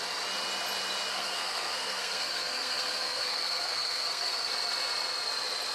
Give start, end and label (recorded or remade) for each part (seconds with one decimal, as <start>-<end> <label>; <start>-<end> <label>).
0.0-1.1 recorded; 1.1-4.5 remade; 4.5-5.7 recorded